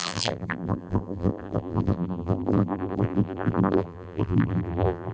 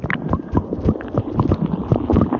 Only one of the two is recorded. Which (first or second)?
second